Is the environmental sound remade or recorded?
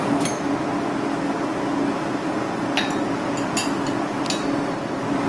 recorded